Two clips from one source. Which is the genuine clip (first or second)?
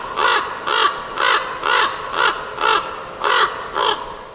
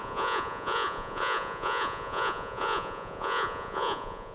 first